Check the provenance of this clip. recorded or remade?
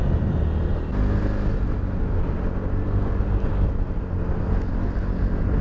recorded